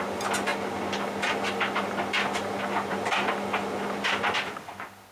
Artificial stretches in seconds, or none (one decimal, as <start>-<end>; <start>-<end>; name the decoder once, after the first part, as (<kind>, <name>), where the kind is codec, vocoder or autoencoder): none